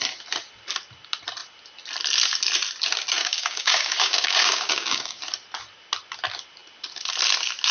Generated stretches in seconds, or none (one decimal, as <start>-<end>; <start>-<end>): 3.2-5.2